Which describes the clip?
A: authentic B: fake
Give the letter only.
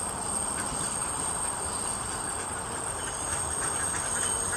A